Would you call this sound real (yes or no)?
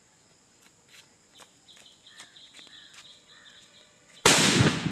no